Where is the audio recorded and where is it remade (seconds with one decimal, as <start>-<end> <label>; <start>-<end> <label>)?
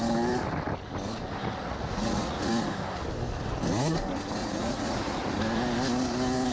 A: 0.0-1.6 recorded; 1.6-2.5 remade; 2.5-4.4 recorded; 4.4-5.3 remade; 5.3-6.5 recorded